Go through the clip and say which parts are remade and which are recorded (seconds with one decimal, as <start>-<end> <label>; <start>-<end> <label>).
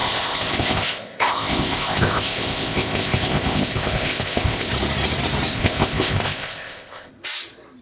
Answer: 0.0-4.7 remade; 4.7-5.5 recorded; 5.5-7.1 remade; 7.1-7.8 recorded